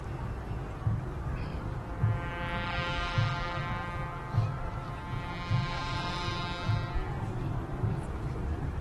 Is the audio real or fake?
real